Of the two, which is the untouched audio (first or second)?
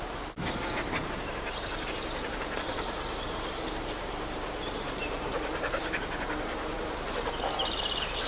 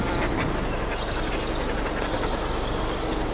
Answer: second